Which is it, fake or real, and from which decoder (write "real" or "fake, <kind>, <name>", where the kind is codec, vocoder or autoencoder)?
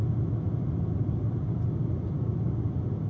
real